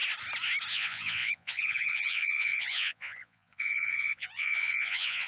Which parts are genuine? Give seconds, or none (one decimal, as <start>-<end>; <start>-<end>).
0.0-0.7